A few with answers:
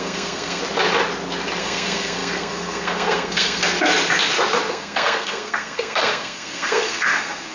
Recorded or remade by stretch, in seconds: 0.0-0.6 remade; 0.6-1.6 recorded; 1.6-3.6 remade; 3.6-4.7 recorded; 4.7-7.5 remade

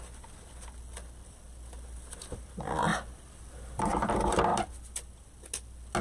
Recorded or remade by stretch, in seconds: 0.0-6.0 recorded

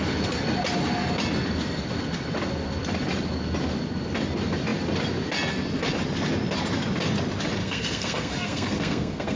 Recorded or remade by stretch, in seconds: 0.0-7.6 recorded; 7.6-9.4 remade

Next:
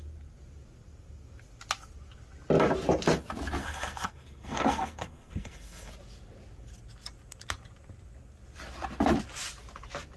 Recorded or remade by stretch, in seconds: 0.0-3.6 recorded; 3.6-5.9 remade; 5.9-10.2 recorded

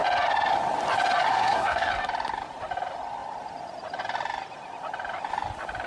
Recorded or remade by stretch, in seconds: 0.0-1.3 recorded; 1.3-1.9 remade; 1.9-5.9 recorded